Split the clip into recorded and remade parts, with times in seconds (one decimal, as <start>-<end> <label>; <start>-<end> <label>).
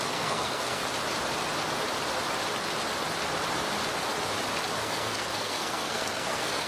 0.0-0.8 remade; 0.8-4.8 recorded; 4.8-6.7 remade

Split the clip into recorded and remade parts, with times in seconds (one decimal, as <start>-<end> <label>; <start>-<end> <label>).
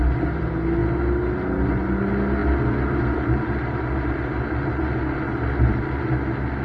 0.0-6.6 recorded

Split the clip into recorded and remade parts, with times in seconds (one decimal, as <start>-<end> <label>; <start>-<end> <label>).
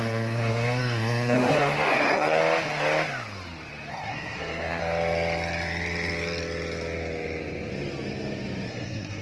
0.0-2.4 remade; 2.4-3.9 recorded; 3.9-4.8 remade; 4.8-8.7 recorded; 8.7-9.2 remade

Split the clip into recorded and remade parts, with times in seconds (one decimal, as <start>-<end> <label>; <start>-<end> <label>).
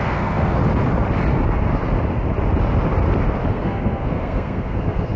0.0-0.6 remade; 0.6-3.5 recorded; 3.5-5.2 remade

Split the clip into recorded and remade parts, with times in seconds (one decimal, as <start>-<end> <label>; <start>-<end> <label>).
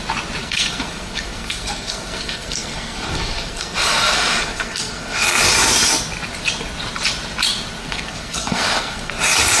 0.0-0.4 recorded; 0.4-5.4 remade; 5.4-7.8 recorded; 7.8-9.1 remade; 9.1-9.6 recorded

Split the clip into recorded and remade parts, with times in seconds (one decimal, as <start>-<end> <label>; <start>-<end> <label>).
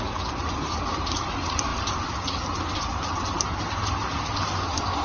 0.0-5.0 recorded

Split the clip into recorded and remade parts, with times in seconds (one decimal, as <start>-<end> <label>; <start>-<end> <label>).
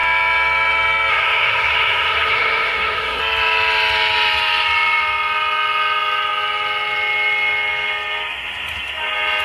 0.0-1.1 recorded; 1.1-3.2 remade; 3.2-9.4 recorded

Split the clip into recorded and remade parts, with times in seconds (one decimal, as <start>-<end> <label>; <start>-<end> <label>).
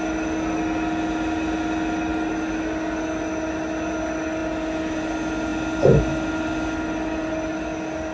0.0-8.1 recorded